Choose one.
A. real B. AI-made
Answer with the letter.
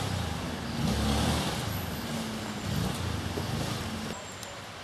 A